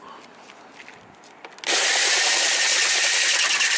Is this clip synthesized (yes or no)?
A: no